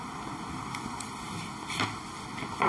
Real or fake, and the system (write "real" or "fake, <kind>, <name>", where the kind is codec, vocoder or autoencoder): real